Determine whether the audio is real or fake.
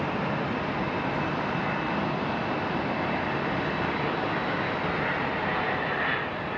real